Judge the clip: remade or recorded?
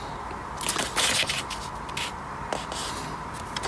recorded